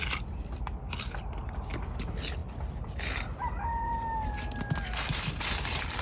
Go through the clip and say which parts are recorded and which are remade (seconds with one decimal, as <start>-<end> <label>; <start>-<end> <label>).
0.0-6.0 recorded